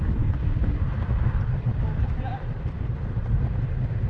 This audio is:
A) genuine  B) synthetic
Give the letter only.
A